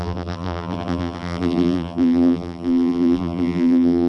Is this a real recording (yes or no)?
no